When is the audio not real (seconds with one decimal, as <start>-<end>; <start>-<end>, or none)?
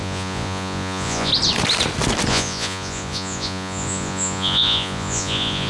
0.0-1.3; 2.3-5.7